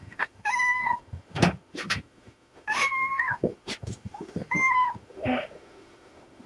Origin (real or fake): fake